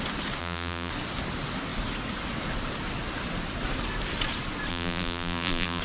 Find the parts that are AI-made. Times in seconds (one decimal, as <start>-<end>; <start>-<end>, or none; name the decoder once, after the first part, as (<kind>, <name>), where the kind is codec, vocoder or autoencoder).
0.4-0.9 (vocoder, BigVGAN v2); 4.7-5.8